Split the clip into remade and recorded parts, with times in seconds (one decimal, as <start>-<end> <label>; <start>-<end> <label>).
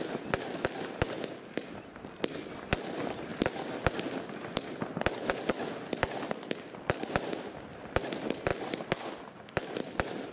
0.0-10.3 recorded